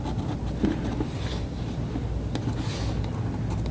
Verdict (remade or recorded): recorded